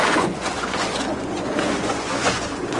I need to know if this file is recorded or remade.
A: remade